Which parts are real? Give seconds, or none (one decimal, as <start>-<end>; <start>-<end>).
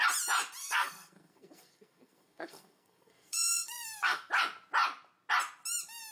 0.0-0.6; 4.3-6.1